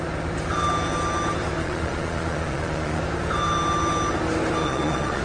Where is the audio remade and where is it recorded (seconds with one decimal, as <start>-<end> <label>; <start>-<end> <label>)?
0.0-1.6 recorded; 1.6-3.0 remade; 3.0-4.6 recorded; 4.6-5.2 remade